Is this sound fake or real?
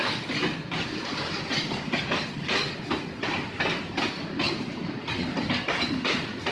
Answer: real